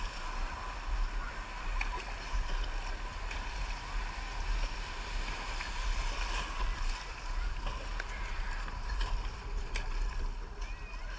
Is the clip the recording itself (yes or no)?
yes